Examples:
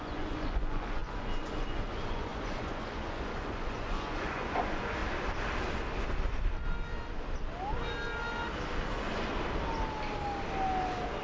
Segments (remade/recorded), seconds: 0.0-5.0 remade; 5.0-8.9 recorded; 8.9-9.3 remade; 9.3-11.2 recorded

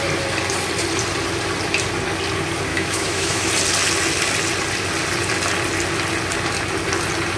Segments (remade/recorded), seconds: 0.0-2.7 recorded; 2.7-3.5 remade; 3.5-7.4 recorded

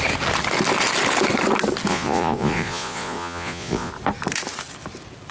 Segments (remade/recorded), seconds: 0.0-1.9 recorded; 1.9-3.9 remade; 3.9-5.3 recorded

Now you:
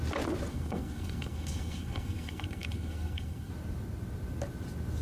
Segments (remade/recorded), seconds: 0.0-0.5 recorded; 0.5-3.5 remade; 3.5-5.0 recorded